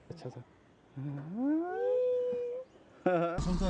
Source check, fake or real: real